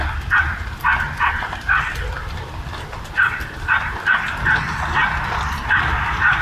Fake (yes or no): no